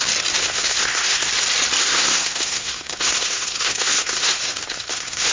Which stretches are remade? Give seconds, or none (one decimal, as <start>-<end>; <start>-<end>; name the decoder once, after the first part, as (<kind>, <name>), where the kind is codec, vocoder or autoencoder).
0.4-1.3 (codec, SNAC); 1.8-5.3